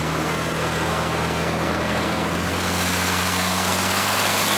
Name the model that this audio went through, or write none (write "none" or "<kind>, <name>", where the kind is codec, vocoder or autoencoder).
codec, SNAC